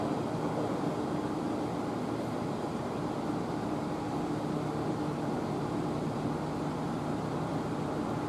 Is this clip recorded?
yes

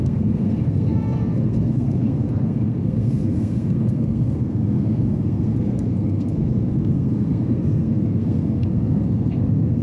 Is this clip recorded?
no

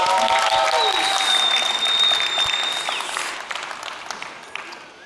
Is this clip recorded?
yes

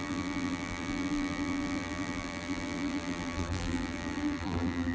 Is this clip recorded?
no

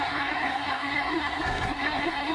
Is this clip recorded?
no